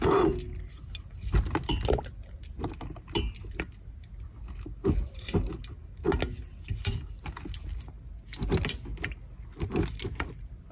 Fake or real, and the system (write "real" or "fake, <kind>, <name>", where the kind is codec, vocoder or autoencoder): real